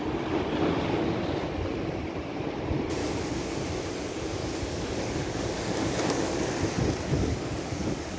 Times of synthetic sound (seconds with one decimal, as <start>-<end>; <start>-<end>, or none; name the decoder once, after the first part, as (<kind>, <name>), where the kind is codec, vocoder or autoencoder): 3.0-3.6 (codec, DAC); 4.4-6.5; 7.1-8.2